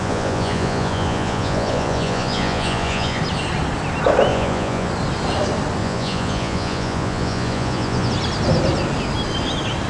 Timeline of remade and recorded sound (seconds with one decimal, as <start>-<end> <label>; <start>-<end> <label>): 0.0-3.2 remade; 3.2-4.3 recorded; 4.3-4.9 remade; 4.9-5.8 recorded; 5.8-8.1 remade; 8.1-9.9 recorded